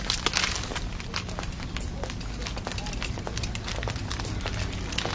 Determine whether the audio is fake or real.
real